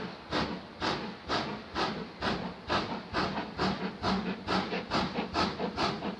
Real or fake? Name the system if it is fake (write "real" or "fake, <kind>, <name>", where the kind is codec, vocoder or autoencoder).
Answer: real